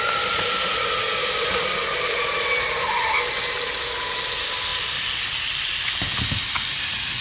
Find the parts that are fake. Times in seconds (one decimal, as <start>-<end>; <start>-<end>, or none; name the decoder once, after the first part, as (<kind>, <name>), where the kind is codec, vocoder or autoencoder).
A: none